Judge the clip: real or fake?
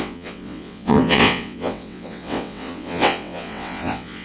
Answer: fake